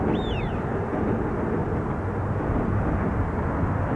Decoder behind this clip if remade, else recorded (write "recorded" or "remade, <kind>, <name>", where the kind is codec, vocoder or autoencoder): recorded